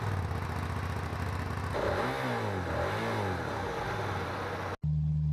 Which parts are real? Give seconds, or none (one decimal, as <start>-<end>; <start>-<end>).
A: 0.0-5.3